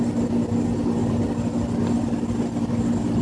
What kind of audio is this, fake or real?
fake